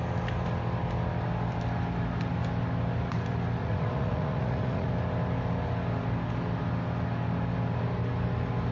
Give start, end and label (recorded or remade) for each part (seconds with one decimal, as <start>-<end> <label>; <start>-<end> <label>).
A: 0.0-3.6 recorded; 3.6-4.9 remade; 4.9-8.7 recorded